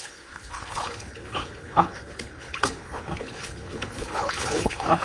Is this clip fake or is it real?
fake